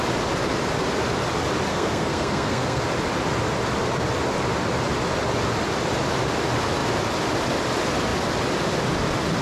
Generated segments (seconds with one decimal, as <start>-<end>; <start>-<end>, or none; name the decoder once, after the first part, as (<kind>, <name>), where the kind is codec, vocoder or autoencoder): 1.7-2.8 (codec, SNAC)